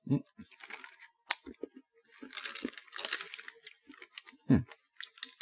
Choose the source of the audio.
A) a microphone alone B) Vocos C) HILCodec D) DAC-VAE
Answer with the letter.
A